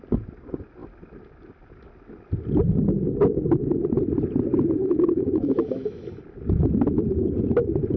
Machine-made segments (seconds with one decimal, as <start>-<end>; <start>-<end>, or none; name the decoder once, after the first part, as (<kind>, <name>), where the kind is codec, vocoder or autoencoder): 4.8-6.0 (autoencoder, DAC-VAE)